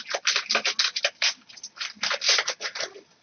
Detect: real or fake real